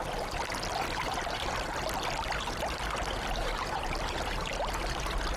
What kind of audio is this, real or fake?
real